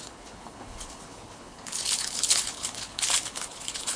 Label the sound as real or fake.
fake